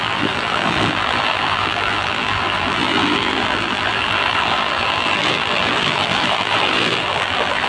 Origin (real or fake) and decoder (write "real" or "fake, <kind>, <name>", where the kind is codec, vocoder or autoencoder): fake, vocoder, BigVGAN v2